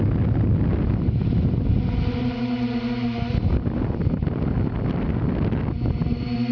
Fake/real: real